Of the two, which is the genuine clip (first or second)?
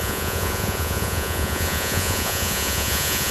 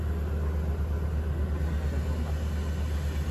second